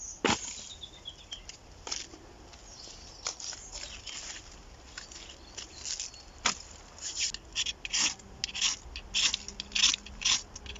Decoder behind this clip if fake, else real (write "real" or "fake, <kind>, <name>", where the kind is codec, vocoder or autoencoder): real